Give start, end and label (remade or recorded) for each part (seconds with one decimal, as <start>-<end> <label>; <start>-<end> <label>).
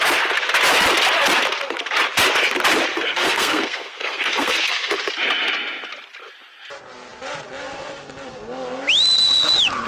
0.0-2.9 recorded; 2.9-4.9 remade; 4.9-9.9 recorded